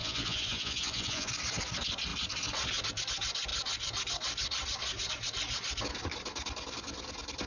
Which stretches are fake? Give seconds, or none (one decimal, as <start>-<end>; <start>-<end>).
0.0-1.3